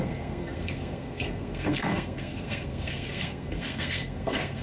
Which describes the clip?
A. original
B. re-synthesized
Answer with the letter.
B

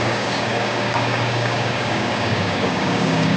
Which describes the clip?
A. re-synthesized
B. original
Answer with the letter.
A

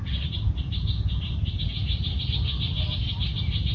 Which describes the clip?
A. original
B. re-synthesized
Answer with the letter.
A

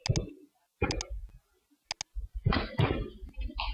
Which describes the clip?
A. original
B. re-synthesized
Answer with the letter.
A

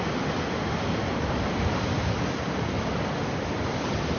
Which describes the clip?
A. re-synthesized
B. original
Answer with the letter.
B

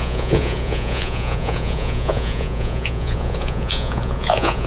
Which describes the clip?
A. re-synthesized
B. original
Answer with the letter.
A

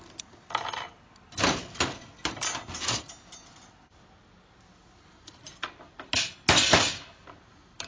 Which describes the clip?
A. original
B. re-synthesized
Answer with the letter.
A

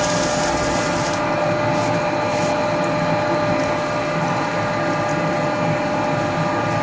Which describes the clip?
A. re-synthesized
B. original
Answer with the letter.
B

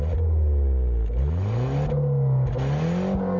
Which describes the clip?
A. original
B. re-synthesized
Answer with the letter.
A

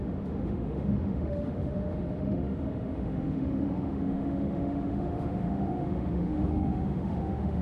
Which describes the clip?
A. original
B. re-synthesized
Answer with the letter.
B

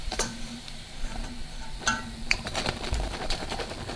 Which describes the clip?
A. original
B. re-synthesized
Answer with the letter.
B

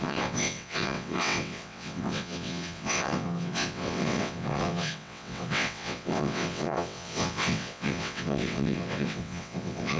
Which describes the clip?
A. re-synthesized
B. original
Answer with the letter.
A